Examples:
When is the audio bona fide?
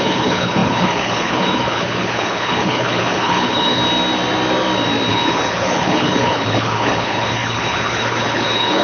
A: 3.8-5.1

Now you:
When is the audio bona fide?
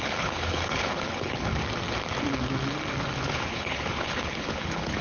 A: 1.5-3.3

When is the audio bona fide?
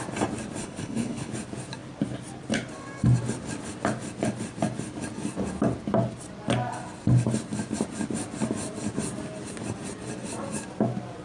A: 0.0-0.6; 1.3-11.2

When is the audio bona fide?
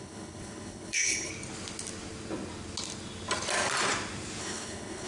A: 1.3-4.4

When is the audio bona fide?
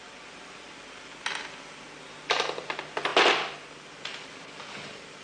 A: 0.0-5.2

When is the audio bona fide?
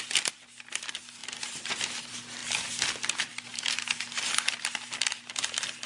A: 0.0-5.9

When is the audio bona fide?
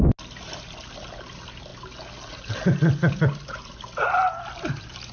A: 0.0-5.1